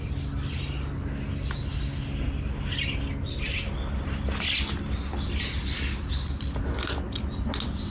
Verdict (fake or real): real